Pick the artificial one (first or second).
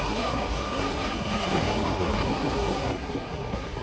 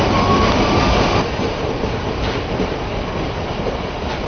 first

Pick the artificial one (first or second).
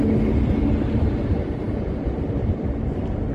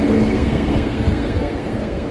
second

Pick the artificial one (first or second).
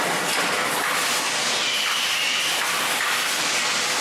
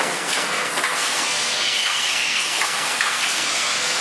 second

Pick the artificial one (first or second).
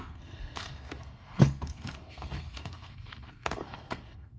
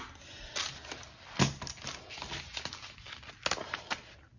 first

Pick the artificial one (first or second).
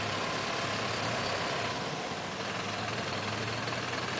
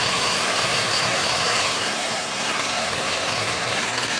second